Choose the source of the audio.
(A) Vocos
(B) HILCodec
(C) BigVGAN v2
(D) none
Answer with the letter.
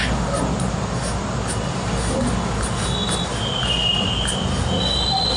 D